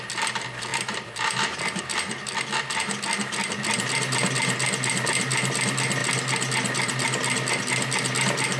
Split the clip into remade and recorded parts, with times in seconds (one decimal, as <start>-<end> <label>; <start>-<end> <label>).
0.0-0.7 recorded; 0.7-1.8 remade; 1.8-8.6 recorded